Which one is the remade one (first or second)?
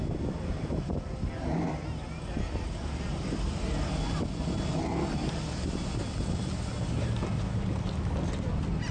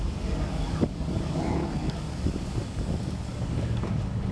second